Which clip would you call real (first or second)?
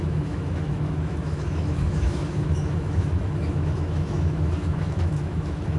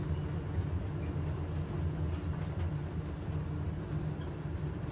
second